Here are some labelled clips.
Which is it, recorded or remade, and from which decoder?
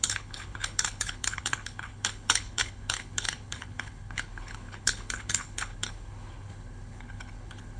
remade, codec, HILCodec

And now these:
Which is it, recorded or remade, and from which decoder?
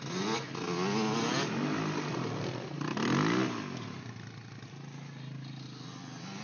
recorded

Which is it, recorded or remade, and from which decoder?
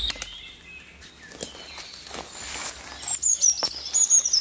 recorded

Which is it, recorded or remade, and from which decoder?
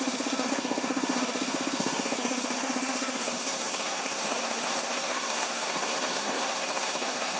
remade, codec, SNAC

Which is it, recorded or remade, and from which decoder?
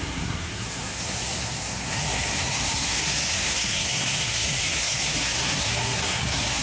remade, codec, SNAC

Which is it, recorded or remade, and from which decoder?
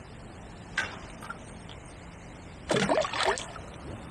recorded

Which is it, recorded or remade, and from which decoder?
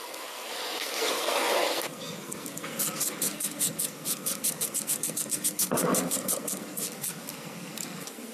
remade, codec, SNAC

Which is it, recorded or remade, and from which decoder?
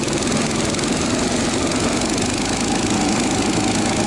recorded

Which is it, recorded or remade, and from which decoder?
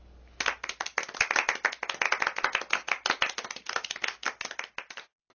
recorded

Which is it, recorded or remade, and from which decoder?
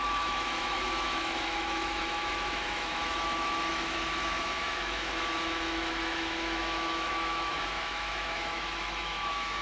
remade, autoencoder, DAC-VAE